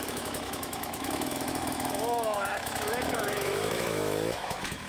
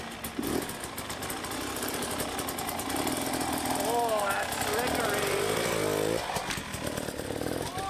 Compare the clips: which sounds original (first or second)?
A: second